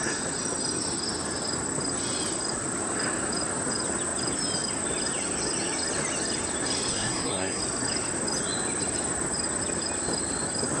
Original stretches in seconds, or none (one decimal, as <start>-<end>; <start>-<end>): 0.0-6.9; 7.6-10.8